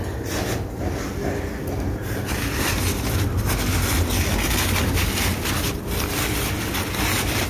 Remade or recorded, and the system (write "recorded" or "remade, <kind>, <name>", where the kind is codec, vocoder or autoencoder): recorded